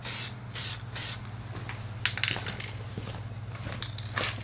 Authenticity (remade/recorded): recorded